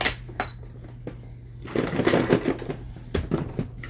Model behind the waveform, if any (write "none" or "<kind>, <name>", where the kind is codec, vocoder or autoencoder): none